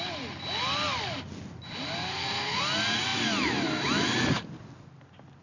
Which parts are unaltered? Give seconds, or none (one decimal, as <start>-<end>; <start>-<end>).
0.0-2.1; 2.6-5.4